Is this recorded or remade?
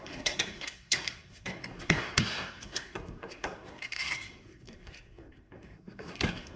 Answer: remade